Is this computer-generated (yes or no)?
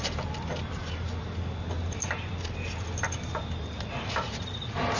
no